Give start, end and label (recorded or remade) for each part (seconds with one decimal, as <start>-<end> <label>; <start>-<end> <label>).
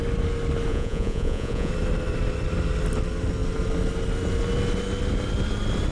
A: 0.0-0.7 recorded; 0.7-1.7 remade; 1.7-5.9 recorded